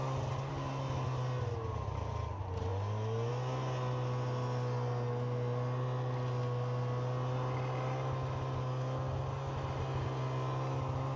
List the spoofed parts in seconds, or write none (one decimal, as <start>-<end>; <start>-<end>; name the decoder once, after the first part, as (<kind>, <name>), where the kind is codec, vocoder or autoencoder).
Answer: none